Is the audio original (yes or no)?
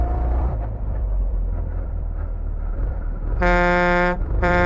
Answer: no